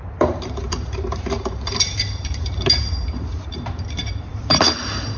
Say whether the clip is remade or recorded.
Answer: remade